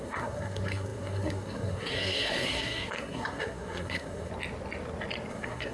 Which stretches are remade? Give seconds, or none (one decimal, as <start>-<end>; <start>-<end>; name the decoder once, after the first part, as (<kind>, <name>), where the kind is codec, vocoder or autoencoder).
0.0-4.3 (codec, SNAC); 5.3-5.7